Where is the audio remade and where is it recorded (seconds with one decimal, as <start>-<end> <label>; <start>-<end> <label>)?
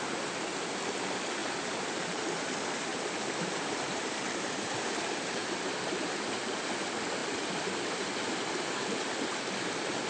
0.0-1.4 recorded; 1.4-2.2 remade; 2.2-2.9 recorded; 2.9-6.7 remade; 6.7-10.1 recorded